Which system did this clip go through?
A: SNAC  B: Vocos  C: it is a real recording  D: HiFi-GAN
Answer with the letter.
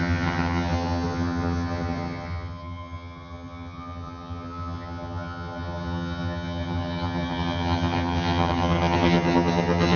D